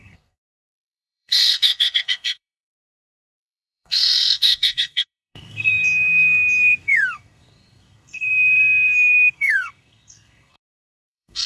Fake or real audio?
fake